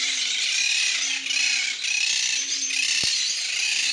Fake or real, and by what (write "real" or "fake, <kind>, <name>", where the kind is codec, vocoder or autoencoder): real